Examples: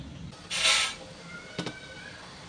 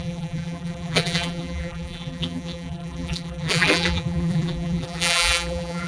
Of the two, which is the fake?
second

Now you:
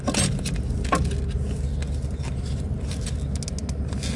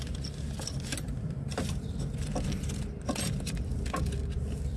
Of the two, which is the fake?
second